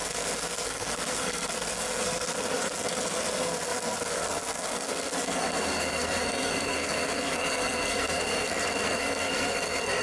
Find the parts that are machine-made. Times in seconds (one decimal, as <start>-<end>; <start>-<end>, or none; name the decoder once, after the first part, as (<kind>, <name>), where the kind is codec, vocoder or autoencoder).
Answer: 0.0-10.0 (codec, SNAC)